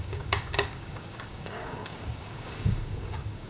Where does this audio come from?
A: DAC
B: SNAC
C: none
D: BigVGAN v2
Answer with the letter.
A